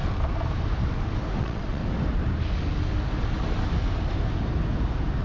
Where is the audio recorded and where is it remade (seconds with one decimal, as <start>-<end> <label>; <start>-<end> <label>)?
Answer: 0.0-1.4 recorded; 1.4-1.8 remade; 1.8-5.2 recorded